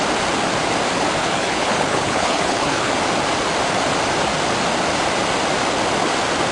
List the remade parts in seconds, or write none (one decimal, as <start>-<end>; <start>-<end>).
1.2-2.9